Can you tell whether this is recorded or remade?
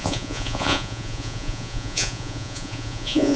remade